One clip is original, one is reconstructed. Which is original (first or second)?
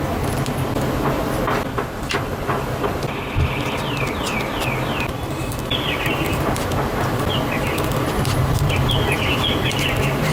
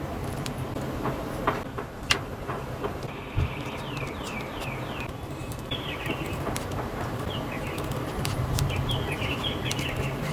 first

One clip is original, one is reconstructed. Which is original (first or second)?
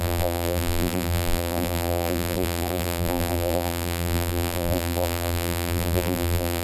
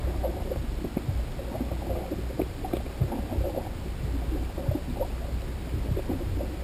second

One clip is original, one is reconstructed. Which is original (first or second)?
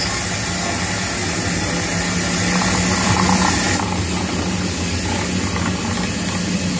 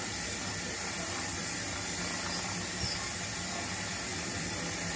first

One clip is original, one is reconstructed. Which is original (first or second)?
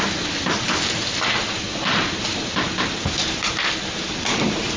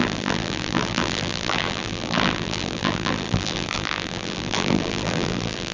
first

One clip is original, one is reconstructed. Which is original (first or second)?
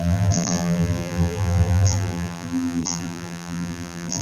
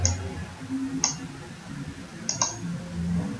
second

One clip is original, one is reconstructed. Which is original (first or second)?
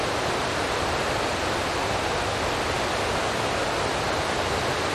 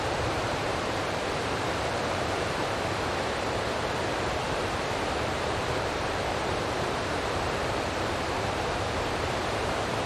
first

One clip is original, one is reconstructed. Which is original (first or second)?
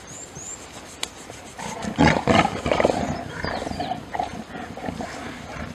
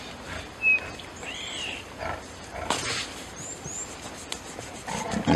second